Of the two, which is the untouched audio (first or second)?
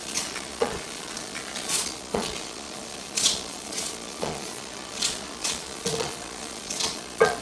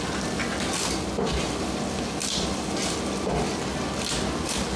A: second